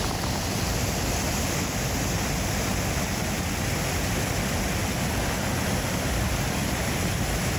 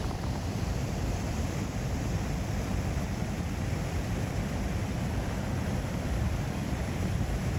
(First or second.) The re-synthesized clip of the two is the second